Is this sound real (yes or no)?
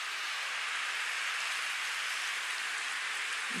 yes